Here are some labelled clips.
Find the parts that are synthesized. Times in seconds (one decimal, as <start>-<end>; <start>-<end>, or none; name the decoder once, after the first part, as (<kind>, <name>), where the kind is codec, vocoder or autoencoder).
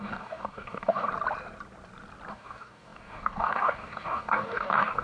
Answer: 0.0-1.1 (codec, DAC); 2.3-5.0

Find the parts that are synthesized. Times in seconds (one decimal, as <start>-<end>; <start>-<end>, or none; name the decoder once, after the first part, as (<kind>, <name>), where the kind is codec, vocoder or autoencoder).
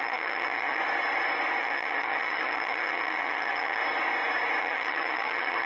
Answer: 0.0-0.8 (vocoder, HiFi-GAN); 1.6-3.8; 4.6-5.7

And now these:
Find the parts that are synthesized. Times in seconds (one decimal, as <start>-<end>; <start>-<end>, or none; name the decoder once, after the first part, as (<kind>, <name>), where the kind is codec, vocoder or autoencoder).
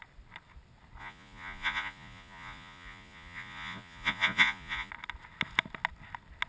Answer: 1.0-4.9 (vocoder, Vocos)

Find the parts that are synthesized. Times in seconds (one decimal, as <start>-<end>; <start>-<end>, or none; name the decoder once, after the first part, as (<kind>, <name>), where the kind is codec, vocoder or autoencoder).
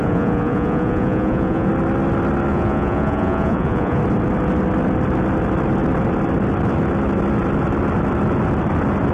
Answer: 0.0-1.7 (vocoder, Vocos); 2.5-4.0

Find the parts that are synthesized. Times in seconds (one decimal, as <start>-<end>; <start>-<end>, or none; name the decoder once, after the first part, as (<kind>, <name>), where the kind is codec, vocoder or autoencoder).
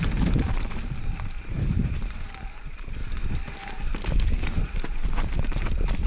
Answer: 0.0-3.0 (vocoder, BigVGAN v2); 4.5-6.1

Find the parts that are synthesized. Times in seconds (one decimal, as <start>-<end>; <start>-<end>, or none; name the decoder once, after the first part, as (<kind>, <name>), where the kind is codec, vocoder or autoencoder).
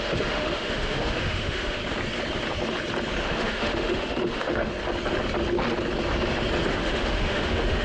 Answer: 0.0-1.8 (autoencoder, DAC-VAE); 3.2-4.7; 6.7-7.8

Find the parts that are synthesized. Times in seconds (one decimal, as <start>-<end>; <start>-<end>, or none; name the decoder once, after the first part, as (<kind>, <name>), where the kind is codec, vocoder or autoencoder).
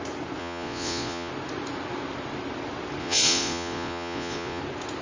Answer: 0.4-1.3 (vocoder, Vocos); 3.0-4.6